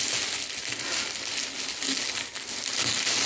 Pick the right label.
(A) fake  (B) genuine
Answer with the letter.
B